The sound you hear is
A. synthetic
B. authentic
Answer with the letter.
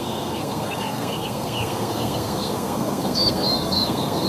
A